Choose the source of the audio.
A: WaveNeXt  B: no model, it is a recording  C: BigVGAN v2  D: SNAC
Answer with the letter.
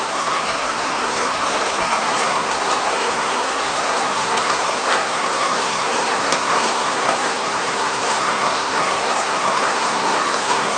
D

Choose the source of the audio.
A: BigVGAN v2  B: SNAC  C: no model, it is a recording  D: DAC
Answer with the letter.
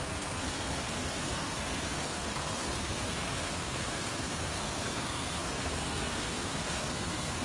B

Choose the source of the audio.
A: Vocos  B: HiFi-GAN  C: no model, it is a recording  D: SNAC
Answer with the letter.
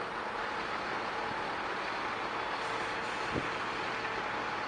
C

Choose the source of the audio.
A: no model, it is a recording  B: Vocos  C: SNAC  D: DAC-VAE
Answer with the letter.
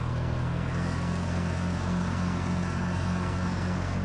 C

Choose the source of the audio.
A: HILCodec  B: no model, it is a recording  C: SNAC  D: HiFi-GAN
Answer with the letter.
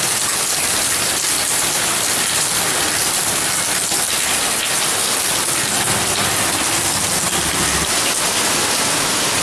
B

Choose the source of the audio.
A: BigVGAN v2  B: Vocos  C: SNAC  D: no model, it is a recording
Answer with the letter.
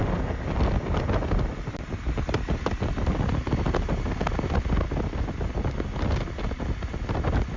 D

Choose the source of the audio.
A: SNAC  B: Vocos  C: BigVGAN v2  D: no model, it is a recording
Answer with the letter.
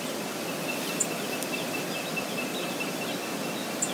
D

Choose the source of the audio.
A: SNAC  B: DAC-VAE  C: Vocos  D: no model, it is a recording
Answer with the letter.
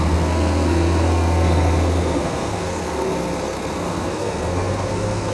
A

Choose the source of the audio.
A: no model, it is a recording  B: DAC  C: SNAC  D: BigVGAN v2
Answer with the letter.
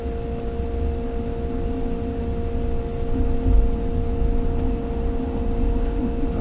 A